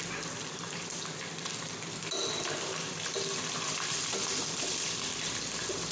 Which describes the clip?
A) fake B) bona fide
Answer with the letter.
A